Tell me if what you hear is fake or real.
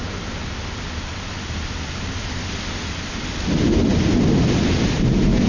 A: real